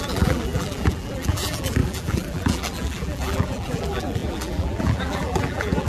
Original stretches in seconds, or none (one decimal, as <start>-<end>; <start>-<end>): none